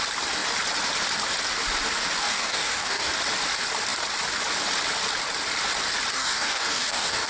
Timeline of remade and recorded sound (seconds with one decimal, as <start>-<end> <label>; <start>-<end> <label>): 0.0-2.2 recorded; 2.2-3.1 remade; 3.1-6.1 recorded; 6.1-7.3 remade